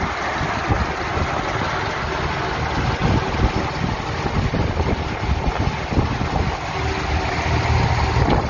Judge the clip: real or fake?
real